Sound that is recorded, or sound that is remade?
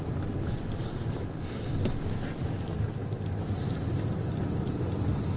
recorded